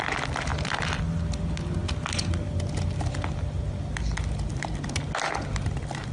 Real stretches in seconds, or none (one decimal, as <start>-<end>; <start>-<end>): 0.0-6.1